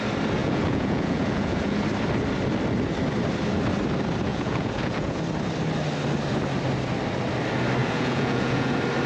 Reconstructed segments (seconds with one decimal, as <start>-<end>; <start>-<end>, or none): 0.4-1.8; 4.3-5.2; 7.8-8.7